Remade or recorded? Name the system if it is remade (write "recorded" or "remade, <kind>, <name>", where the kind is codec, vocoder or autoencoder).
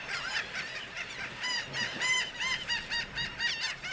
remade, vocoder, BigVGAN v2